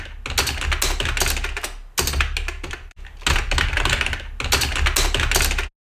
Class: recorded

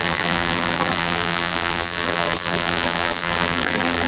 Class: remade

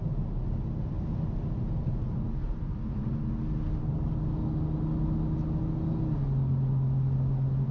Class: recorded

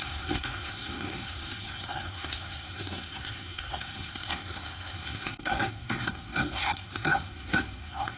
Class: remade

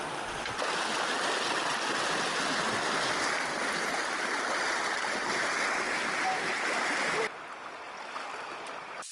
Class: recorded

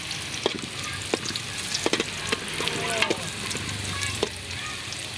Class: recorded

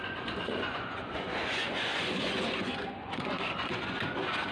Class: remade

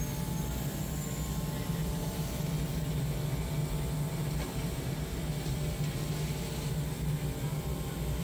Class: recorded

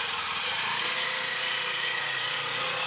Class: remade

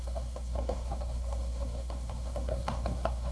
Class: remade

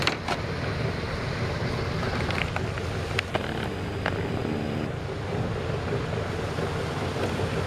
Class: recorded